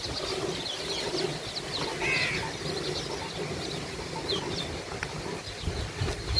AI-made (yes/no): no